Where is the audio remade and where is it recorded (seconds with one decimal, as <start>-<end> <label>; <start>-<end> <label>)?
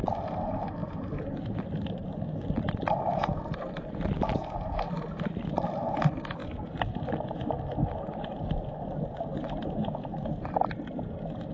0.0-0.8 recorded; 0.8-3.7 remade; 3.7-11.5 recorded